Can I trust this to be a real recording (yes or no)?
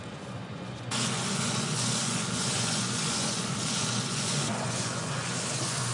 no